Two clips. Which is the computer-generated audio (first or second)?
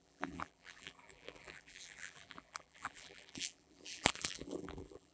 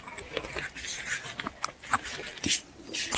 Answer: first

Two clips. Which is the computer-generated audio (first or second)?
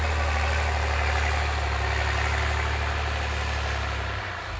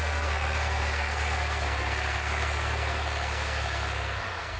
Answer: second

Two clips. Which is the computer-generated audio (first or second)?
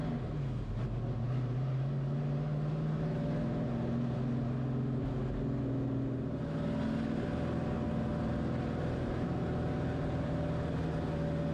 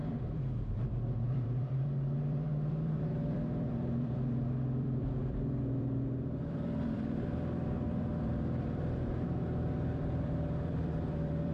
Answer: second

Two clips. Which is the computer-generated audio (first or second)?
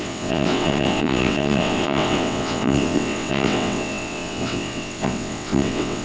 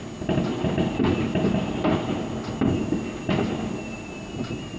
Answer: first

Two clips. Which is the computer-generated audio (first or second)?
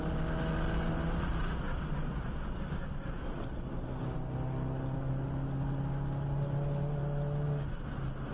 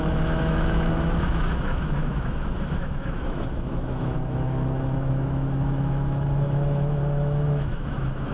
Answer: second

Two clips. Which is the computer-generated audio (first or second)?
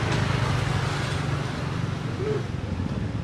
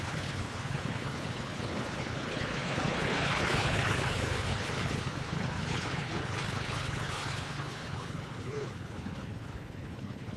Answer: second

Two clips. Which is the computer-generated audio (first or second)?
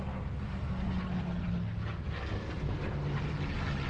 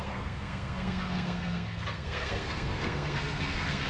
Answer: second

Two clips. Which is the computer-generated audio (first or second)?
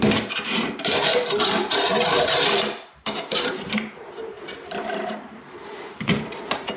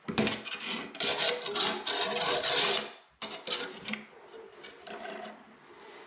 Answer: first